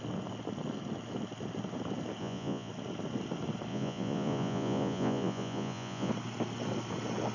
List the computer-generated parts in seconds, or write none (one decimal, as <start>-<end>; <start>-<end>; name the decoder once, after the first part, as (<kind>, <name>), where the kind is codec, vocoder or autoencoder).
2.2-2.7 (vocoder, Vocos); 3.7-6.1